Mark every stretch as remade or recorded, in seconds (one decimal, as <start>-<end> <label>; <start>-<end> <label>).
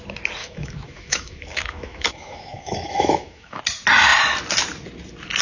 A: 0.0-0.4 recorded; 0.4-3.6 remade; 3.6-5.4 recorded